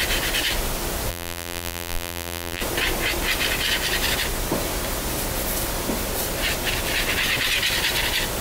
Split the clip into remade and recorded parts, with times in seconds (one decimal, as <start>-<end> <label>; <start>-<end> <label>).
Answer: 0.0-1.1 recorded; 1.1-2.6 remade; 2.6-8.4 recorded